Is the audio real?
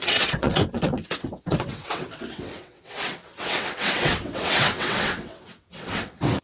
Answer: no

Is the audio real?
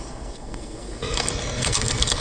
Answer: no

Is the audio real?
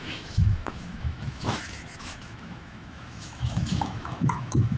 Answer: no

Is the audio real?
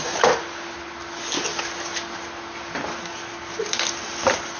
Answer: yes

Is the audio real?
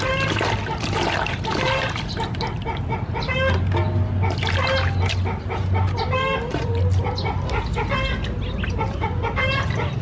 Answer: yes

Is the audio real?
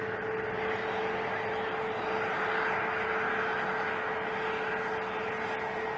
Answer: yes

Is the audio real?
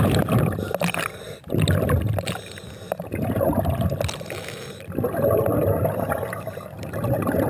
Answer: yes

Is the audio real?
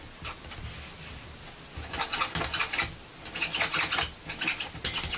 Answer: yes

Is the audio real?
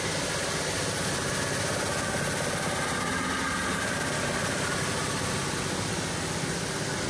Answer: yes